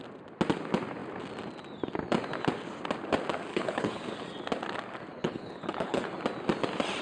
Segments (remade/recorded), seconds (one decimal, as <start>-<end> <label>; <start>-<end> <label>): 0.0-3.5 recorded; 3.5-4.0 remade; 4.0-5.1 recorded; 5.1-6.1 remade; 6.1-7.0 recorded